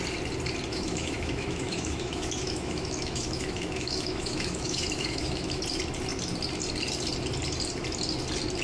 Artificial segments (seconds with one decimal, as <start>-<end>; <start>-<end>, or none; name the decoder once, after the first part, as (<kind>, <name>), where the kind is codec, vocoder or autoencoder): 0.7-5.6 (autoencoder, DAC-VAE)